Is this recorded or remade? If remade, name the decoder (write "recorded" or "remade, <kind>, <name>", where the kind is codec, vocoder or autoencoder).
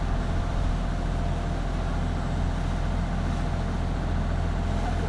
recorded